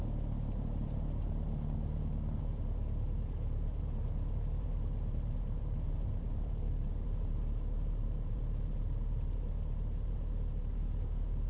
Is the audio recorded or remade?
remade